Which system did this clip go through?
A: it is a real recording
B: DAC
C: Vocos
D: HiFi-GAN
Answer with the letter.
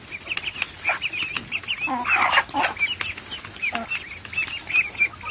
A